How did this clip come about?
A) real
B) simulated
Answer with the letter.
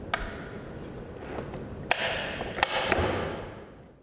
A